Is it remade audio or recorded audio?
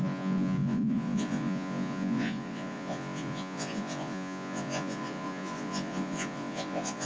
remade